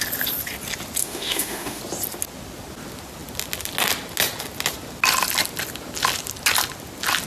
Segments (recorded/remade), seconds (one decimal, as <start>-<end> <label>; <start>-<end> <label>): 0.0-1.0 recorded; 1.0-1.8 remade; 1.8-7.3 recorded